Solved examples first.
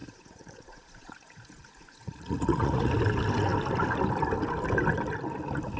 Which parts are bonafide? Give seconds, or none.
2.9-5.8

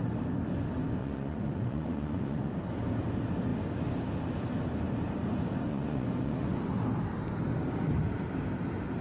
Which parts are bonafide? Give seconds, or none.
0.0-1.0; 2.5-5.7; 6.6-9.0

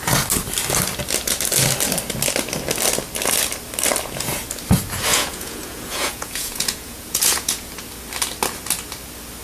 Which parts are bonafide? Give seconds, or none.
0.0-5.1; 7.7-9.4